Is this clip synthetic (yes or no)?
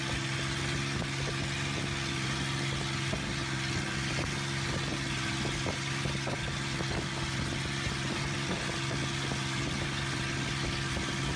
no